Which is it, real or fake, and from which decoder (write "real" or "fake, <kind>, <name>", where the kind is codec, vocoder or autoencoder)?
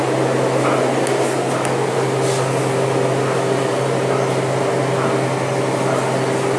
real